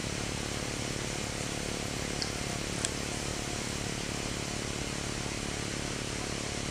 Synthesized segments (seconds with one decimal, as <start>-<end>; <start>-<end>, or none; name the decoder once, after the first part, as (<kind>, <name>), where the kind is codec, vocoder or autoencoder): none